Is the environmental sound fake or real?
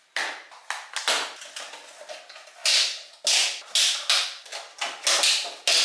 real